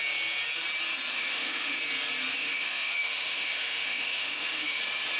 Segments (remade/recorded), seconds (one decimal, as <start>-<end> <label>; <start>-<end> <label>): 0.0-1.1 recorded; 1.1-1.8 remade; 1.8-2.4 recorded; 2.4-4.8 remade; 4.8-5.2 recorded